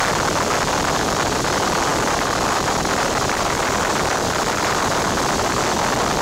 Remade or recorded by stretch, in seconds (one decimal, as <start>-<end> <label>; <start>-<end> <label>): 0.0-1.9 recorded; 1.9-5.6 remade; 5.6-6.2 recorded